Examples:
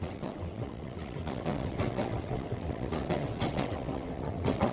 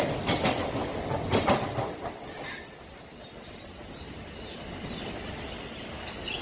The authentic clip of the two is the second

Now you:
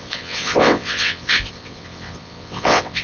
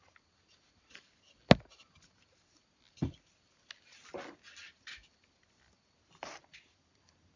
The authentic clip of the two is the second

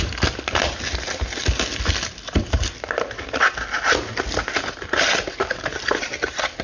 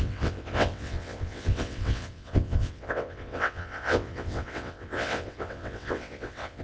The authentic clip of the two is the first